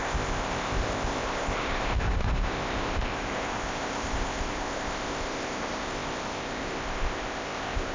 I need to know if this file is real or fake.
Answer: fake